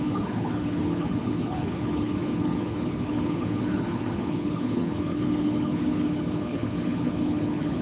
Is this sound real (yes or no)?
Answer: no